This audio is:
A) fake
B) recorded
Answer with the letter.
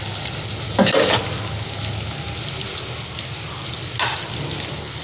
B